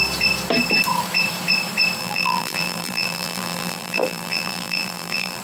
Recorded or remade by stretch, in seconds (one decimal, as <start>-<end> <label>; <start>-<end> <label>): 0.0-2.0 recorded; 2.0-5.4 remade